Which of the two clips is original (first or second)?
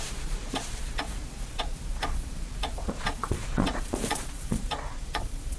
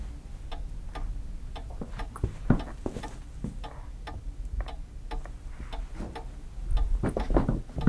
second